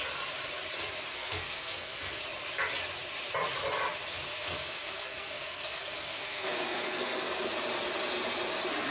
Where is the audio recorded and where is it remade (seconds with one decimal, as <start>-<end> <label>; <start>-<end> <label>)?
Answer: 0.0-1.1 recorded; 1.1-2.2 remade; 2.2-4.3 recorded; 4.3-7.5 remade; 7.5-8.9 recorded